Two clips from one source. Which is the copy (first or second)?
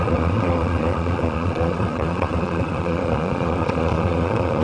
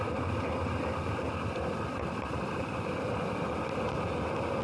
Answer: first